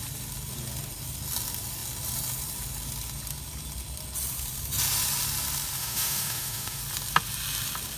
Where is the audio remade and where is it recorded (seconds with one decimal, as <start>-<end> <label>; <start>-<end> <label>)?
0.0-5.8 recorded; 5.8-6.8 remade; 6.8-8.0 recorded